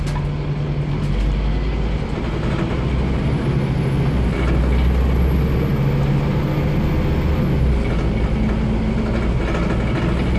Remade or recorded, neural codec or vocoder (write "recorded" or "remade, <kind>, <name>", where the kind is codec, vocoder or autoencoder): recorded